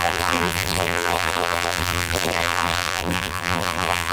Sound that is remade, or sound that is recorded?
remade